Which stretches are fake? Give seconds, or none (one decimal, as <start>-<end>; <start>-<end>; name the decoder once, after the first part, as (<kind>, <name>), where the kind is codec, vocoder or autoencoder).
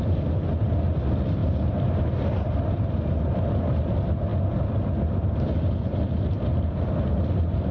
none